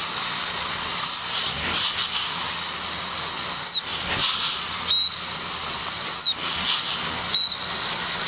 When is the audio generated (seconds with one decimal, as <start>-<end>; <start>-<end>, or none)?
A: none